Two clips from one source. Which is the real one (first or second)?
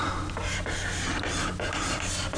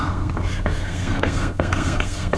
first